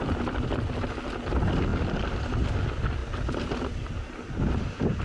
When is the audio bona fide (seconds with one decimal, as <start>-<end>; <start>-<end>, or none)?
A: 0.0-5.0